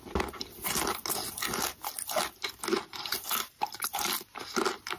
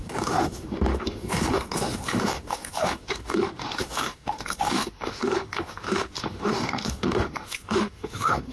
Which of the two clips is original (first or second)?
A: first